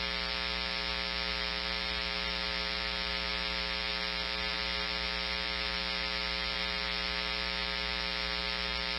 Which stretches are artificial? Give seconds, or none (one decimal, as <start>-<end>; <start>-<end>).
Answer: none